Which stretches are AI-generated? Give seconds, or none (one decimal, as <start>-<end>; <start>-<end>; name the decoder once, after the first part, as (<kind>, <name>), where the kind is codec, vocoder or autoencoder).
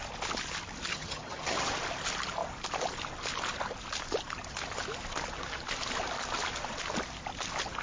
0.9-1.7 (vocoder, HiFi-GAN)